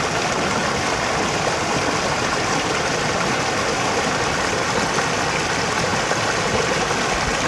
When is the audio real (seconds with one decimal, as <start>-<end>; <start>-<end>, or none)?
0.0-7.5